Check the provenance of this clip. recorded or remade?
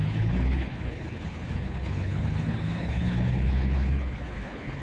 remade